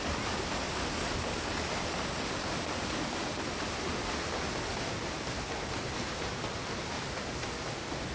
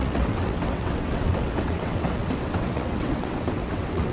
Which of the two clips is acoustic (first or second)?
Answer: first